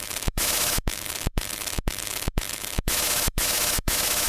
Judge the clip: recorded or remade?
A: remade